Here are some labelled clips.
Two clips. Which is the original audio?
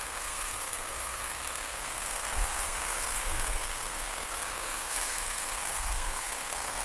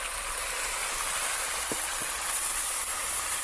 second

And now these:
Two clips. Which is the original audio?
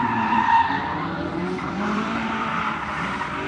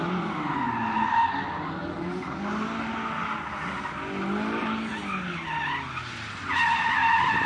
second